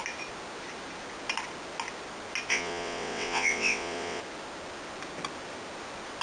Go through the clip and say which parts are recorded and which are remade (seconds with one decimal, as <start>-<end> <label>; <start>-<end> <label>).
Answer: 0.0-2.5 recorded; 2.5-4.2 remade; 4.2-6.2 recorded